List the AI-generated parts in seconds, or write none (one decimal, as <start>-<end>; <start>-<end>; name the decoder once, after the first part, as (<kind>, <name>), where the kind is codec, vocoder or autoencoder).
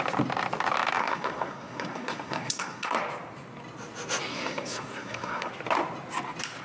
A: 1.0-3.0 (codec, SNAC); 4.3-5.5